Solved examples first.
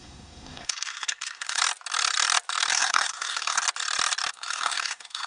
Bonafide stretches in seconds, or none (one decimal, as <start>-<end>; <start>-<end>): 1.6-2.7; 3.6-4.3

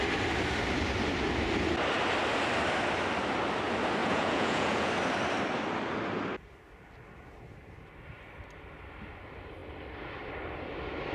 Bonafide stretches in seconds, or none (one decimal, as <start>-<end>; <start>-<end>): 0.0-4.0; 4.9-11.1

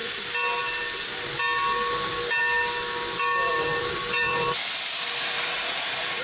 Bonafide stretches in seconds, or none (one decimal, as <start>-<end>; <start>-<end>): 0.0-3.5

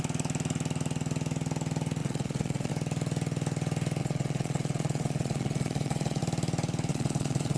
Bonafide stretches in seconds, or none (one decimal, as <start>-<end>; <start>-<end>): 0.0-2.0; 2.7-4.0; 6.2-6.9